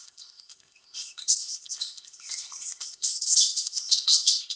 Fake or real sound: fake